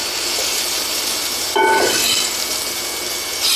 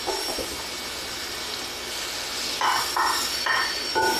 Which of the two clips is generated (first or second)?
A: first